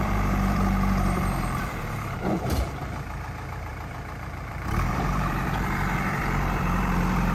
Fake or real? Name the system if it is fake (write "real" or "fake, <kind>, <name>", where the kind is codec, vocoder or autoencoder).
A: fake, vocoder, BigVGAN v2